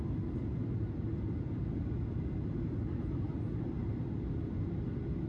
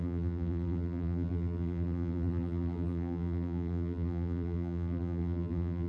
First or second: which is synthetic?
second